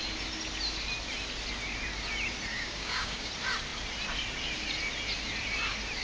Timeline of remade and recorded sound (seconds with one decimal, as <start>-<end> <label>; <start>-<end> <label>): 0.0-2.5 recorded; 2.5-3.3 remade; 3.3-6.0 recorded